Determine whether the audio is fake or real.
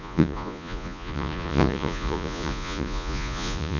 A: fake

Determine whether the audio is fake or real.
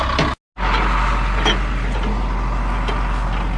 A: real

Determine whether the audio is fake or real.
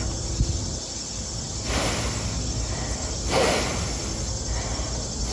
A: real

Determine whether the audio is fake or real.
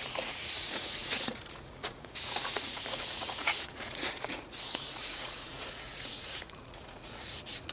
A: fake